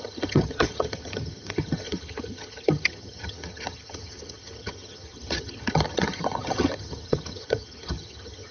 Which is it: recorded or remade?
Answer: remade